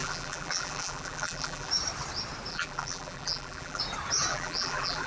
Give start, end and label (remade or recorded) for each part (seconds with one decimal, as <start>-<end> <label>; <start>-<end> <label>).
0.0-1.7 remade; 1.7-2.5 recorded; 2.5-3.8 remade; 3.8-4.3 recorded; 4.3-5.1 remade